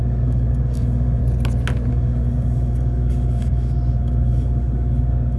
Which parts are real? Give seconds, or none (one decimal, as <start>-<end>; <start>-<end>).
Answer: 1.2-1.9